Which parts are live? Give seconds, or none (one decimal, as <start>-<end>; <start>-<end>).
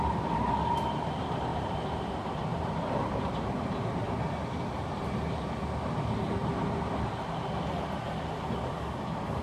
0.0-1.5; 2.1-2.5; 4.3-6.4; 7.1-9.4